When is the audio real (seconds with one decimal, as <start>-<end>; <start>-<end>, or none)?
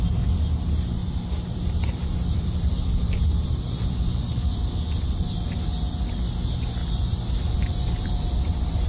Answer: 0.0-1.0; 5.9-6.8